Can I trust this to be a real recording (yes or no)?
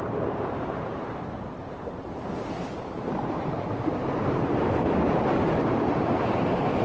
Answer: no